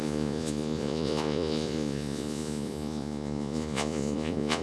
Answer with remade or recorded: remade